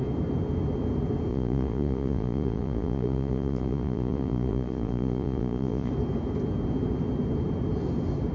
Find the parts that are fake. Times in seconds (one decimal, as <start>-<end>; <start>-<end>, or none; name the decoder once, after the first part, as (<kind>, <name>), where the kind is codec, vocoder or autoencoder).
1.3-5.9 (vocoder, Vocos)